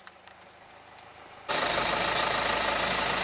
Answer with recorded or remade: recorded